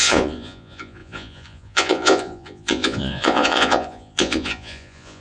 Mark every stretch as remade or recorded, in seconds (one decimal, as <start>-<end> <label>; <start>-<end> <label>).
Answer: 0.0-5.2 remade